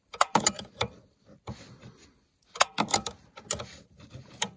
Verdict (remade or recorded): recorded